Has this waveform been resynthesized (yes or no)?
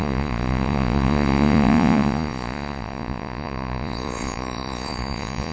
yes